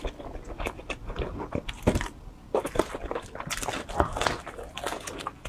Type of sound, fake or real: real